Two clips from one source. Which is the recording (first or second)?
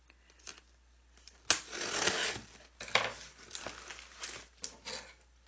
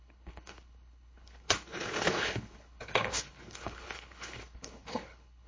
first